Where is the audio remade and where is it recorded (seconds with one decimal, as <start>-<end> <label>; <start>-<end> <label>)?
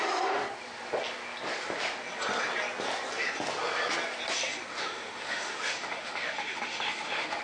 0.0-4.7 recorded; 4.7-7.4 remade